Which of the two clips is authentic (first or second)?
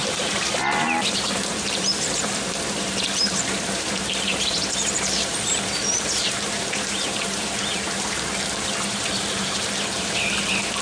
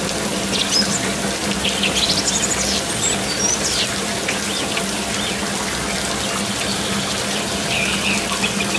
second